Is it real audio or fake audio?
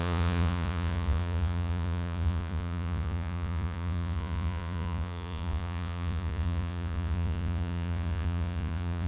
fake